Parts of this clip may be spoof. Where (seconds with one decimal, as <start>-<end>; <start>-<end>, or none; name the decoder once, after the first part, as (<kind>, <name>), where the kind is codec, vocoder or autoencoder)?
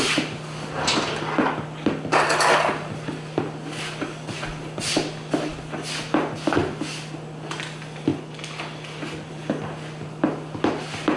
none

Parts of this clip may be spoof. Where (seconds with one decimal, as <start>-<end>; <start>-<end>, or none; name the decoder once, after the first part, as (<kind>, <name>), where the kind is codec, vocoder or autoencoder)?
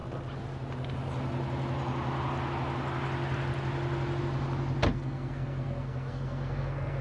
4.9-7.0 (codec, SNAC)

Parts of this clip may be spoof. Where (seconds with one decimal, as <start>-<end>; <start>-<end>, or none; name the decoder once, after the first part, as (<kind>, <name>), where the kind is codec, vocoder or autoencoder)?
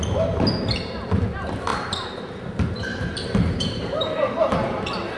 2.9-4.2 (vocoder, BigVGAN v2)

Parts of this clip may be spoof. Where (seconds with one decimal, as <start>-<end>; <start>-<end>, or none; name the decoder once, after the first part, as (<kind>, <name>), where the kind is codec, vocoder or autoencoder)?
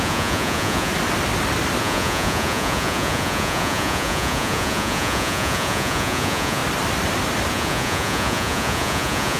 0.0-0.9 (vocoder, Vocos); 1.8-6.6; 7.5-9.4